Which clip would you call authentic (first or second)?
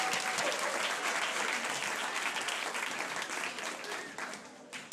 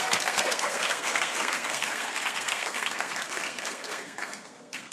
first